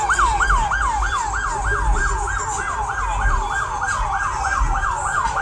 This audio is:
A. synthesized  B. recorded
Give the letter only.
B